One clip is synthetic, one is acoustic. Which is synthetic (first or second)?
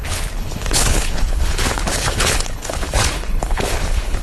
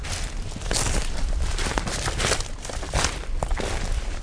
first